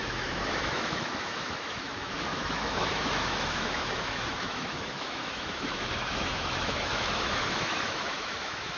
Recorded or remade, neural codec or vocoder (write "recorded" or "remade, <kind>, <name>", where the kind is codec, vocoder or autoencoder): remade, autoencoder, DAC-VAE